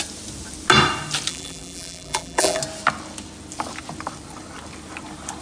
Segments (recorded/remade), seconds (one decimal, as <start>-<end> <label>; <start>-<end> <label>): 0.0-1.3 recorded; 1.3-2.6 remade; 2.6-5.4 recorded